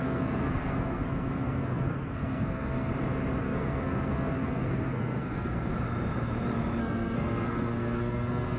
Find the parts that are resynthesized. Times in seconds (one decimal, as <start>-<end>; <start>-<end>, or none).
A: 0.0-2.9; 3.4-5.7; 6.8-8.6